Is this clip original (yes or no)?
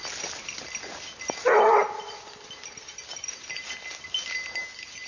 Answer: yes